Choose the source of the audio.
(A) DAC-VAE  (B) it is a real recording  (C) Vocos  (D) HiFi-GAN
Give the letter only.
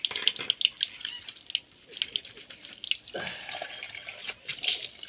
B